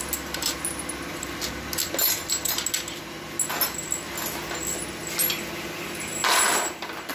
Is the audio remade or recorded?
recorded